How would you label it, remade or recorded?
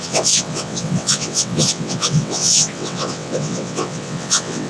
remade